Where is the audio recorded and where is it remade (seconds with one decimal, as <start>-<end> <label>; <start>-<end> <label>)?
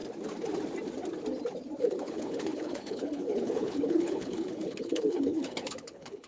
0.0-1.8 recorded; 1.8-6.3 remade